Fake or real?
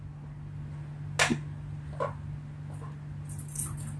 real